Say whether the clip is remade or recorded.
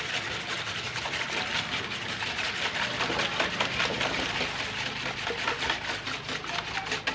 recorded